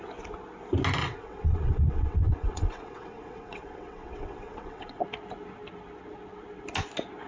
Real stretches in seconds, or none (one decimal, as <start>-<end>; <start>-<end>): 0.0-1.0; 5.0-7.3